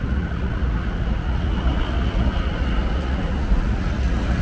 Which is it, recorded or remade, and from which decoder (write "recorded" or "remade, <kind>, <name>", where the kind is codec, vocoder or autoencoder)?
remade, vocoder, Vocos